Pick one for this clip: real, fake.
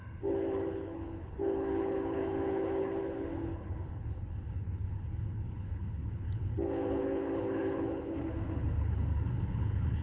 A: fake